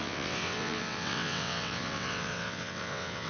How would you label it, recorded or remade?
remade